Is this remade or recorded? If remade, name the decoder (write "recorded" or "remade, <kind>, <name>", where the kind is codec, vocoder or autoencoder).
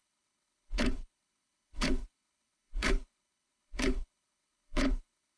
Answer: remade, codec, HILCodec